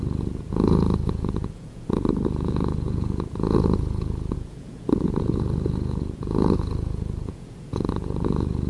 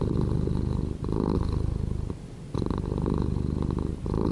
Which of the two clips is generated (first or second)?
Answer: first